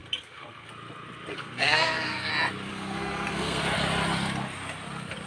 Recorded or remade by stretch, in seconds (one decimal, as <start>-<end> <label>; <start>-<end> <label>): 0.0-0.7 remade; 0.7-1.3 recorded; 1.3-2.3 remade; 2.3-2.7 recorded; 2.7-3.6 remade; 3.6-5.3 recorded